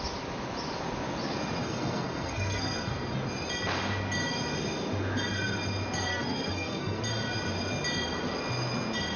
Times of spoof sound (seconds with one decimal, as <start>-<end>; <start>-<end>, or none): 1.6-2.9; 6.1-7.0